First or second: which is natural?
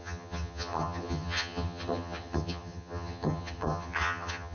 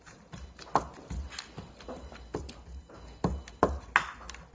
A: second